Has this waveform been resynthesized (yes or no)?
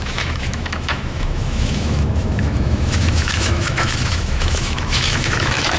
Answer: yes